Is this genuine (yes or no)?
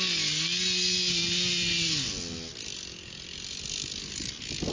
yes